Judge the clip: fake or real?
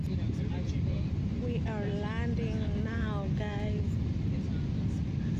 real